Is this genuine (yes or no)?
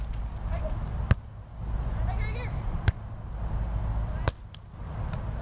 yes